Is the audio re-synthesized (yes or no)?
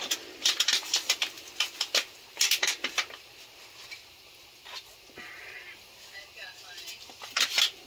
no